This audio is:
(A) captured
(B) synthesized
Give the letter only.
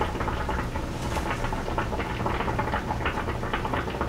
A